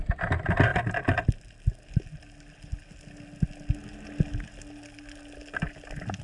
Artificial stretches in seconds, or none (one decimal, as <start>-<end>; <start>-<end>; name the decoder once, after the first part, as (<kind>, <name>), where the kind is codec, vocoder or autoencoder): none